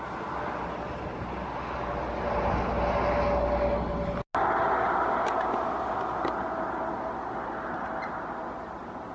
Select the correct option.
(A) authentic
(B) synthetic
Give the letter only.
A